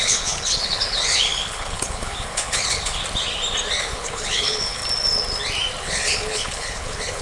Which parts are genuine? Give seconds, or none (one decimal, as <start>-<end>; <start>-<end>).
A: 3.0-3.8; 4.8-5.8